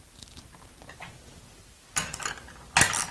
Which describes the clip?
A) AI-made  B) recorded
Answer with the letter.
B